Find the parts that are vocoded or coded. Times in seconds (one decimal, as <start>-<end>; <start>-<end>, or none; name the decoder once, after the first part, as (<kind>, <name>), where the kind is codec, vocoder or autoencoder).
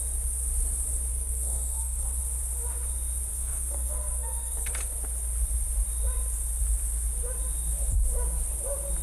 1.1-2.2 (codec, SNAC); 3.3-4.7